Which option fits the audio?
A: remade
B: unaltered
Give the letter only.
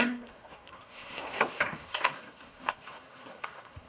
A